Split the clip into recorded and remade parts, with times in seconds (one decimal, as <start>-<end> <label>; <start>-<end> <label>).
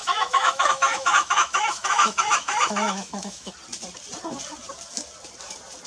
0.0-3.5 remade; 3.5-5.9 recorded